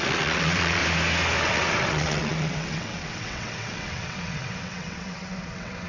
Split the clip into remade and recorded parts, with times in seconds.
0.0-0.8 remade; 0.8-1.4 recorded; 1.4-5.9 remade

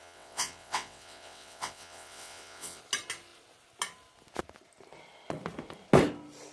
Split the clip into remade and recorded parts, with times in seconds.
0.0-2.8 remade; 2.8-6.5 recorded

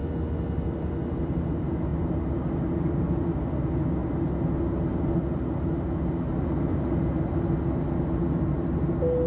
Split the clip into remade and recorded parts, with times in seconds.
0.0-9.3 recorded

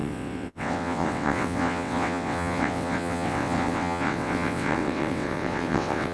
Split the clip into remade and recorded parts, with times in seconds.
0.0-6.1 remade